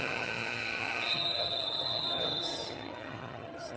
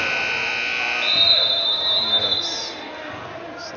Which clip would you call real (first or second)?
second